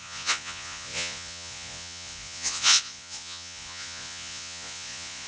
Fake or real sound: fake